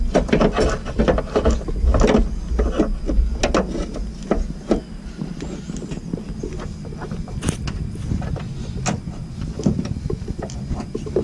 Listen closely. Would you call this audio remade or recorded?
recorded